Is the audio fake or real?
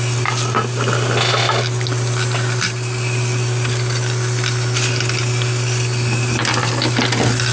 real